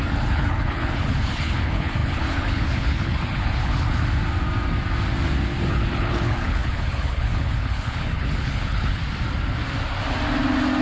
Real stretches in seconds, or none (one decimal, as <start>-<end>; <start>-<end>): 4.0-5.7; 9.0-10.8